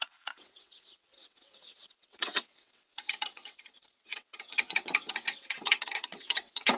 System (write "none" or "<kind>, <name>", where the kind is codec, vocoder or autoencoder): vocoder, WaveNeXt